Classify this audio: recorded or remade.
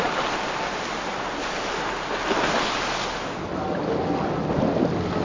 recorded